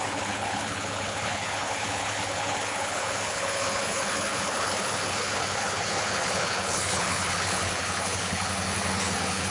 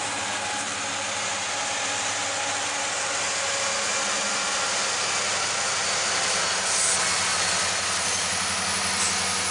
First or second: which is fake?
first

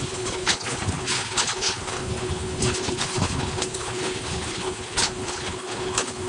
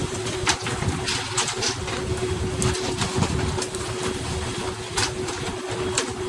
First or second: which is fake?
first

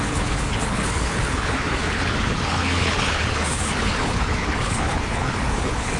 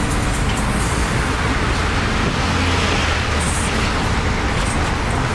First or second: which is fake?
first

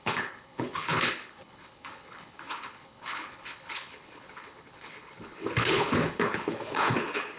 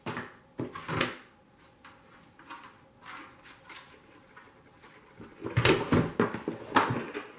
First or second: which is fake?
first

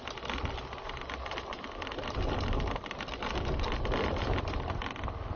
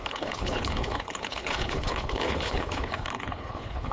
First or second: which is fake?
second